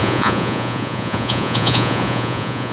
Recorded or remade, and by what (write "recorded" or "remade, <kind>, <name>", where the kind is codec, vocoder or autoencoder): remade, vocoder, Vocos